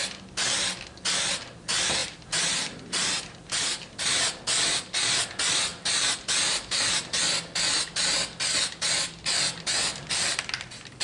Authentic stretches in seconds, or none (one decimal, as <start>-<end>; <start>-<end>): 0.0-2.0; 4.4-5.7; 7.2-11.0